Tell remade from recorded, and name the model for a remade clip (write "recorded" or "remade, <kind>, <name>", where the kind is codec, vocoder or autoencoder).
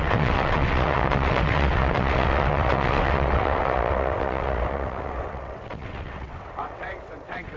remade, vocoder, WaveNeXt